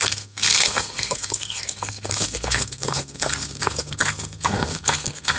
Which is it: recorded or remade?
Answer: remade